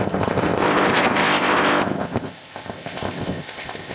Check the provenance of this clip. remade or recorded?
remade